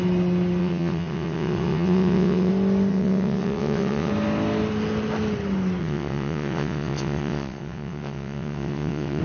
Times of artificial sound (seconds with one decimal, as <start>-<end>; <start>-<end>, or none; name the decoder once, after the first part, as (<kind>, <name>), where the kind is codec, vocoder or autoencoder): 0.6-2.5 (vocoder, WaveNeXt); 2.9-4.1; 5.8-9.2